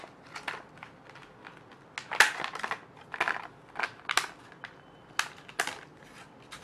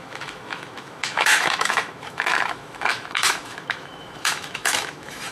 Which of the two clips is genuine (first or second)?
first